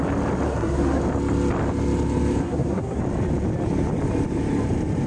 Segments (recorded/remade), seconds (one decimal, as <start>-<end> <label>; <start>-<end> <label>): 0.0-0.5 recorded; 0.5-1.0 remade; 1.0-2.4 recorded; 2.4-3.0 remade; 3.0-5.1 recorded